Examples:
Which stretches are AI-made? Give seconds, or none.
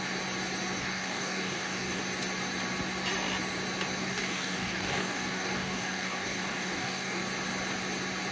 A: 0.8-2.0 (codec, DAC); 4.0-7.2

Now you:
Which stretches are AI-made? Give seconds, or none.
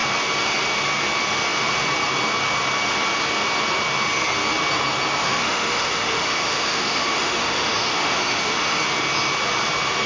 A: 5.2-8.8 (autoencoder, DAC-VAE)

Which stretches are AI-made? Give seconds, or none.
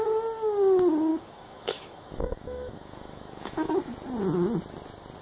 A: 1.1-3.7 (autoencoder, DAC-VAE)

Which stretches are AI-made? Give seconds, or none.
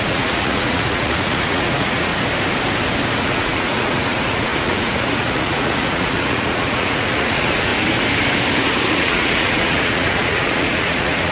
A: 0.0-2.1 (vocoder, Vocos); 3.2-7.7; 8.9-11.3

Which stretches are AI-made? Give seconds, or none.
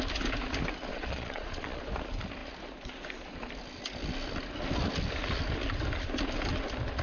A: 0.9-1.8 (vocoder, Vocos)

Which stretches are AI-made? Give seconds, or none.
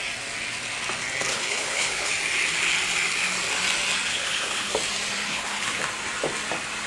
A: 1.3-2.1 (codec, HILCodec); 4.1-4.7; 5.3-5.8